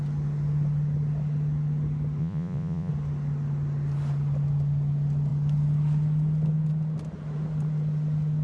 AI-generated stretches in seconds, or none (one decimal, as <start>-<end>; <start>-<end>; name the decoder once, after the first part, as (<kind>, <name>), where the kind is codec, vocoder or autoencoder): 2.2-2.9 (vocoder, Vocos)